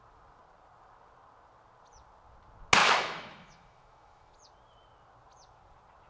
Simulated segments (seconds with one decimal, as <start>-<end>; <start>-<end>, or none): 2.8-4.3